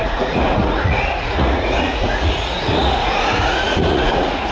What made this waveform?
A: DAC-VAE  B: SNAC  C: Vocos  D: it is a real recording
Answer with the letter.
C